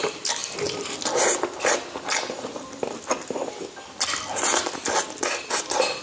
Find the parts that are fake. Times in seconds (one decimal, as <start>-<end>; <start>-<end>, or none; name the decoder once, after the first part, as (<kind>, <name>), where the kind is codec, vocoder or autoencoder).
none